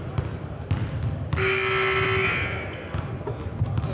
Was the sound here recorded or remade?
recorded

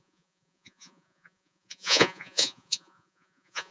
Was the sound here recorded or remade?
remade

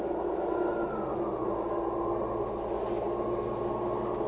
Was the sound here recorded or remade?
recorded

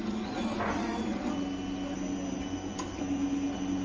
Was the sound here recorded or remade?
recorded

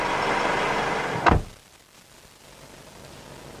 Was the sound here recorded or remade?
recorded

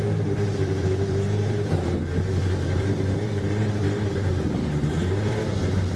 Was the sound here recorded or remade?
remade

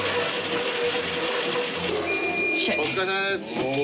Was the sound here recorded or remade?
recorded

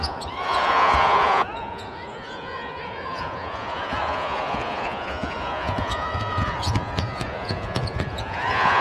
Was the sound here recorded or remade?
remade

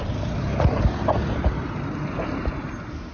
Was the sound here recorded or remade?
recorded